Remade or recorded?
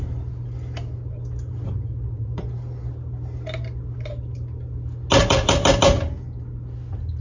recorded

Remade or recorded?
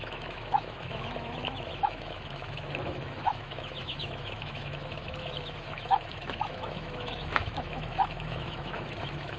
remade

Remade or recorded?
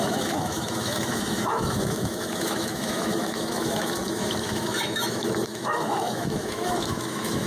remade